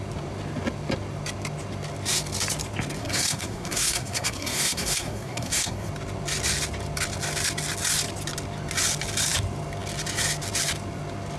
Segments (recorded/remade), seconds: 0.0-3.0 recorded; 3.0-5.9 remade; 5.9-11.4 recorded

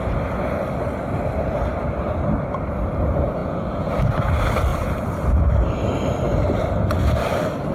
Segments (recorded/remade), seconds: 0.0-3.4 recorded; 3.4-3.9 remade; 3.9-7.7 recorded

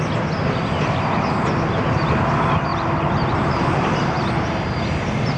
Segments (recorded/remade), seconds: 0.0-2.7 recorded; 2.7-4.5 remade; 4.5-5.4 recorded

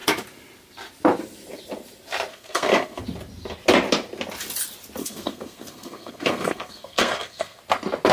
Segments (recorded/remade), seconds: 0.0-2.3 recorded; 2.3-3.0 remade; 3.0-5.0 recorded; 5.0-7.6 remade; 7.6-8.1 recorded

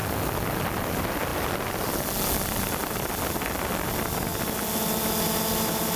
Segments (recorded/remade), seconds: 0.0-6.0 recorded